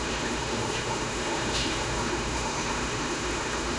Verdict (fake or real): fake